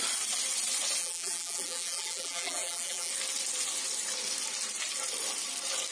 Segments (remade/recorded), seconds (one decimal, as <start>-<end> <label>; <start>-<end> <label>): 0.0-1.0 recorded; 1.0-3.1 remade; 3.1-5.9 recorded